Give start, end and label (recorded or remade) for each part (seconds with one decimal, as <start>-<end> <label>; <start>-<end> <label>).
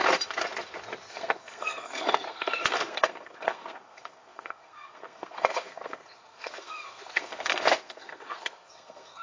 0.0-1.1 recorded; 1.1-9.2 remade